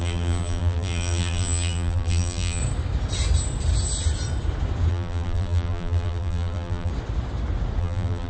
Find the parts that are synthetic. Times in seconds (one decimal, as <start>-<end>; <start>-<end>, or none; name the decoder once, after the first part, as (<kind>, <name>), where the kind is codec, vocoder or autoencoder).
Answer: 0.0-2.6 (vocoder, BigVGAN v2); 4.9-6.9; 7.8-8.3